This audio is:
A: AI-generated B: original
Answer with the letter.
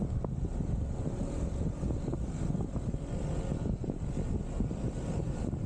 B